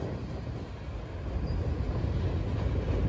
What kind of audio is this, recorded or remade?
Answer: recorded